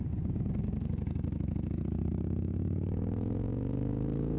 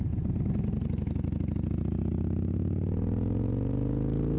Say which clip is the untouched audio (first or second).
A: second